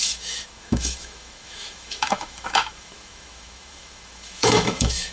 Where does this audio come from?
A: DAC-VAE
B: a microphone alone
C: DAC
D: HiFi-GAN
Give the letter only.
A